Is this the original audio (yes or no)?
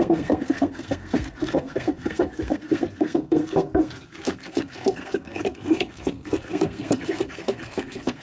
no